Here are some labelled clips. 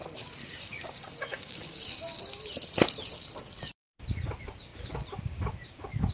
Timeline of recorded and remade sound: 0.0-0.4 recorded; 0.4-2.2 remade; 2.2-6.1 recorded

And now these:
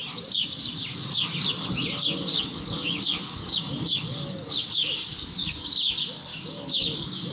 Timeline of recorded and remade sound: 0.0-2.3 recorded; 2.3-5.7 remade; 5.7-6.3 recorded; 6.3-7.3 remade

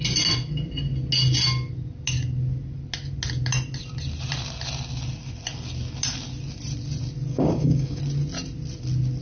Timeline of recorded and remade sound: 0.0-7.3 recorded; 7.3-8.0 remade; 8.0-9.2 recorded

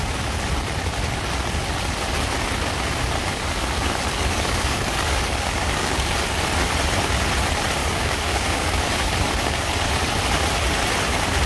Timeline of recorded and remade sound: 0.0-3.3 recorded; 3.3-6.1 remade; 6.1-7.8 recorded; 7.8-9.9 remade; 9.9-11.5 recorded

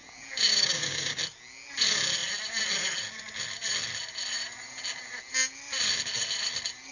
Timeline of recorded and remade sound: 0.0-0.5 recorded; 0.5-1.2 remade; 1.2-6.9 recorded

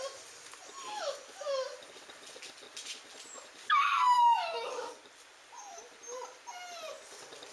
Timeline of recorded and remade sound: 0.0-3.6 recorded; 3.6-4.9 remade; 4.9-7.5 recorded